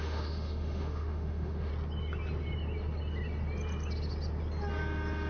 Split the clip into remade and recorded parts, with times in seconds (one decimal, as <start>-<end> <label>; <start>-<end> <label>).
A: 0.0-1.7 remade; 1.7-5.3 recorded